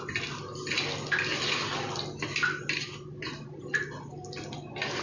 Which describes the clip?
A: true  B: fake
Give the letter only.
A